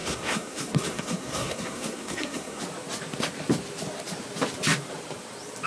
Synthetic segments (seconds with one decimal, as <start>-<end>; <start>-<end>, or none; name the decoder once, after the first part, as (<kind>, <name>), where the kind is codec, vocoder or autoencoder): 0.0-2.6 (codec, SNAC)

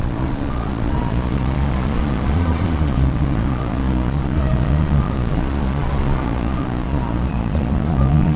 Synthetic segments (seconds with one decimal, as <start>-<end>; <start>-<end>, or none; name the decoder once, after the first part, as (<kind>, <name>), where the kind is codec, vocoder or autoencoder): 0.0-8.4 (vocoder, Vocos)

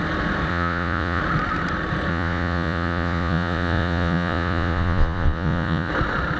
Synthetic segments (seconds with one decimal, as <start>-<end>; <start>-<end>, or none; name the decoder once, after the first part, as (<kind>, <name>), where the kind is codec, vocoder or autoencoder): 0.5-1.2 (vocoder, Vocos); 2.1-5.9

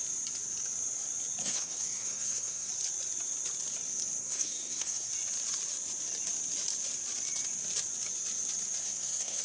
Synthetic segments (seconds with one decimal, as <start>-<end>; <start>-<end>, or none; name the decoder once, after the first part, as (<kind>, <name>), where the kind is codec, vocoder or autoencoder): 1.4-2.7 (codec, SNAC); 4.2-5.1; 8.8-9.4

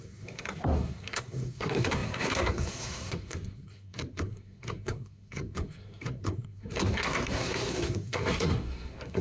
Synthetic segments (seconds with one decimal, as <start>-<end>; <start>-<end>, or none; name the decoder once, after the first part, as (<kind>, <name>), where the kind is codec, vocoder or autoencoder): 0.0-9.2 (codec, SNAC)

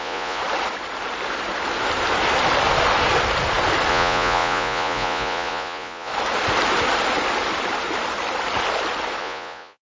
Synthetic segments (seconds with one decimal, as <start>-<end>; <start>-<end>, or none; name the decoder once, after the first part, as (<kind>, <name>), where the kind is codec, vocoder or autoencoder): 0.0-0.4 (vocoder, Vocos); 3.9-6.1; 9.2-10.0

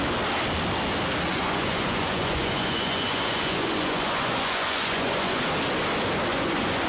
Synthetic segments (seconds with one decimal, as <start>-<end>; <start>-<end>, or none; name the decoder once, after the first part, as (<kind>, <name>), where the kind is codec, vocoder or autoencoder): 1.3-5.4 (vocoder, Vocos); 6.3-6.9

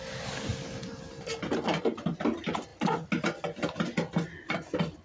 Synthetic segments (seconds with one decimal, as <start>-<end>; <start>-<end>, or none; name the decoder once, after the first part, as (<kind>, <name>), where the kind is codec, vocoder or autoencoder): none